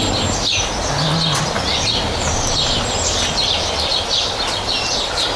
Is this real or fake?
real